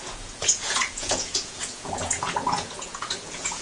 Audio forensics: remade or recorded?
remade